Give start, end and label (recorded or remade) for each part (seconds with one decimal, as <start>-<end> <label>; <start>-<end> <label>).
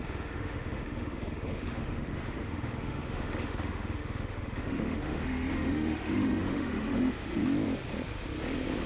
0.0-7.4 remade; 7.4-8.9 recorded